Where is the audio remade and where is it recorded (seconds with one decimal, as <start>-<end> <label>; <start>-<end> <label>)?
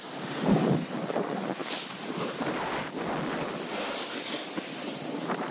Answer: 0.0-5.5 recorded